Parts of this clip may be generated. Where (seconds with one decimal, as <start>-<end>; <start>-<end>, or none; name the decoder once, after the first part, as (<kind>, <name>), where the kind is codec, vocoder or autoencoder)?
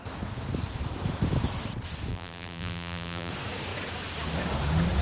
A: 2.1-3.3 (vocoder, BigVGAN v2)